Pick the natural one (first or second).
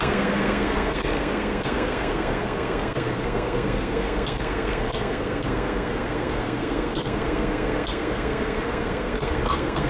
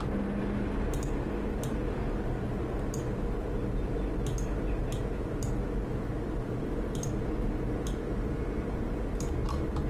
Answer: second